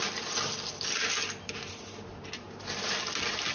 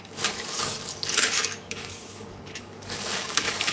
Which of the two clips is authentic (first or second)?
first